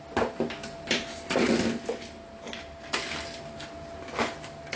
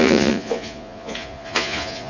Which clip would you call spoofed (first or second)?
second